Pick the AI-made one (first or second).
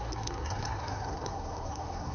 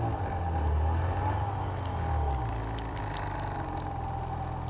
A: first